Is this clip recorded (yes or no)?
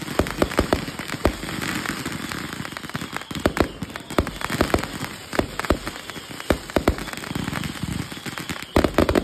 no